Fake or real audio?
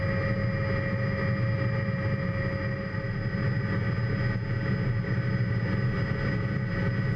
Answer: real